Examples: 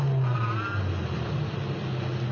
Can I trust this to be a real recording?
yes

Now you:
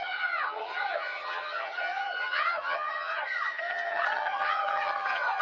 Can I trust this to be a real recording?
no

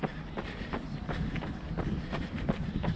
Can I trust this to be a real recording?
yes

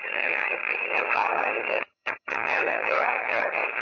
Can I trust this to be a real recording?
no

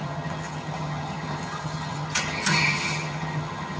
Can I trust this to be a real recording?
no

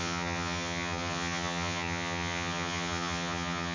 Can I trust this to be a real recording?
no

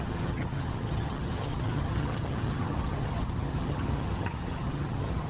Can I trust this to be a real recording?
no